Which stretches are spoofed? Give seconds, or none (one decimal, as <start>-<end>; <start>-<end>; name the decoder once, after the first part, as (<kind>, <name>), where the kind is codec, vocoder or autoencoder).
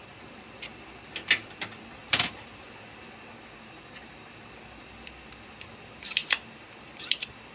2.0-3.1 (vocoder, BigVGAN v2); 6.2-7.5